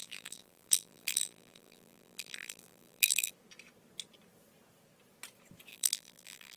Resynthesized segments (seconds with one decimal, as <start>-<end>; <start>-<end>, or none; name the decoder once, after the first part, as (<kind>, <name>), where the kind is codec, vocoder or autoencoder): 0.0-3.3 (vocoder, BigVGAN v2); 5.7-6.6